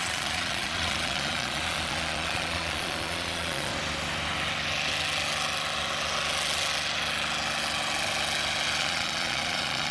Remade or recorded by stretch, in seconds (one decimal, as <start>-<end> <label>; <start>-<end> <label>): 0.0-3.7 remade; 3.7-8.8 recorded; 8.8-9.9 remade